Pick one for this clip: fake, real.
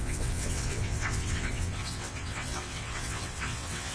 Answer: fake